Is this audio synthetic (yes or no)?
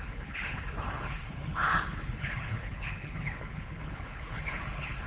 yes